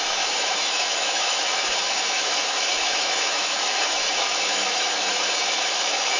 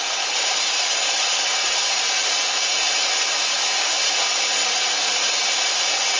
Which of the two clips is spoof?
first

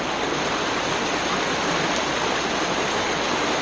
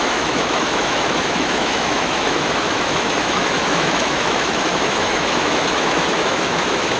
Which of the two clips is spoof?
second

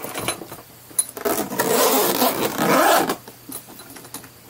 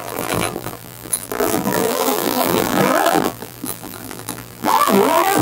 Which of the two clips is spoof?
second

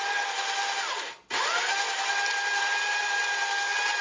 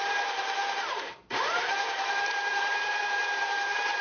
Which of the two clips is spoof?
second